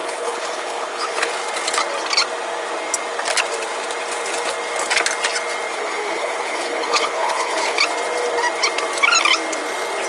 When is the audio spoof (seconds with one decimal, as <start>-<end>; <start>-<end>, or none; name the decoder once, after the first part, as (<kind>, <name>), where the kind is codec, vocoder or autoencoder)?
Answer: 0.0-1.3 (codec, HILCodec); 5.7-7.8